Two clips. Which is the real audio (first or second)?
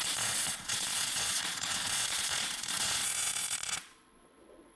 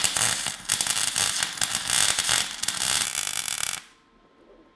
second